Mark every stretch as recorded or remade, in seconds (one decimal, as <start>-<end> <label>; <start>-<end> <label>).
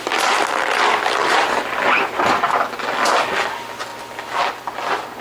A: 0.0-1.2 recorded; 1.2-2.2 remade; 2.2-5.2 recorded